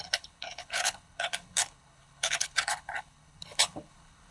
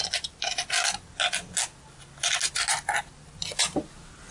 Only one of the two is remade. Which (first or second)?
first